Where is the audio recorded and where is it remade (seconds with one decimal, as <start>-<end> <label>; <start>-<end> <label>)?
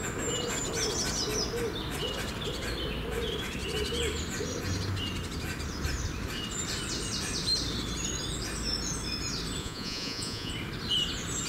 0.0-9.6 recorded; 9.6-10.5 remade; 10.5-11.5 recorded